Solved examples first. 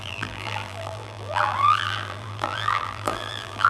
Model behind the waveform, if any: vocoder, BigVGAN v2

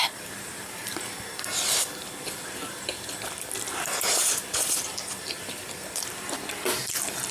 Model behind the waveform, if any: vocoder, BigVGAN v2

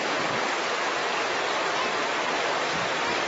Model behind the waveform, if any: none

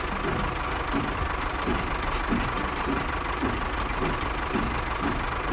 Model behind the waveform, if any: none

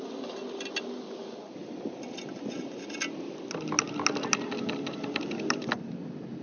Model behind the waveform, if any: none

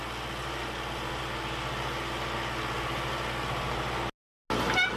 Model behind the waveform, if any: none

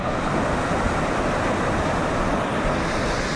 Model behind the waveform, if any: none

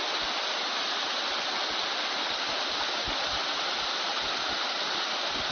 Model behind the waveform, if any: none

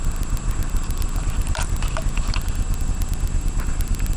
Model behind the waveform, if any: vocoder, BigVGAN v2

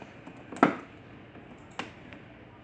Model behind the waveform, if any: none